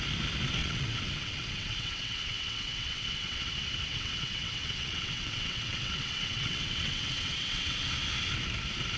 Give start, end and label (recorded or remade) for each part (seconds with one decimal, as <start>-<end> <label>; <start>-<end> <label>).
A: 0.0-0.6 recorded; 0.6-3.4 remade; 3.4-3.9 recorded; 3.9-7.9 remade; 7.9-9.0 recorded